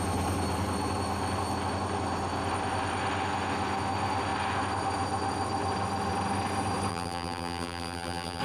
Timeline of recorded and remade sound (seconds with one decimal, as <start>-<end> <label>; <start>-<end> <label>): 0.0-6.9 recorded; 6.9-8.4 remade